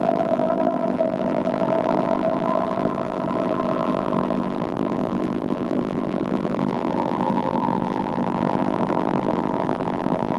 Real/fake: fake